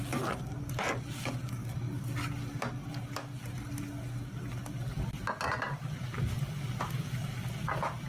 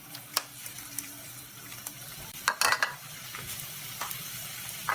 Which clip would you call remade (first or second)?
second